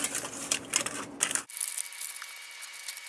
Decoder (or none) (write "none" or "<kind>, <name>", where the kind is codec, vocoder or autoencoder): none